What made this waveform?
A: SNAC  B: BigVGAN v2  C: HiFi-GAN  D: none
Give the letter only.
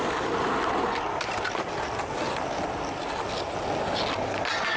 D